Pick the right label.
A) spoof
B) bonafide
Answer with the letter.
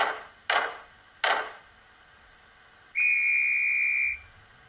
B